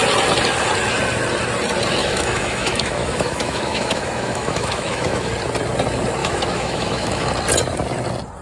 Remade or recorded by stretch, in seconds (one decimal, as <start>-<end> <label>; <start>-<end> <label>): 0.0-2.0 recorded; 2.0-5.3 remade; 5.3-6.2 recorded; 6.2-7.3 remade; 7.3-8.4 recorded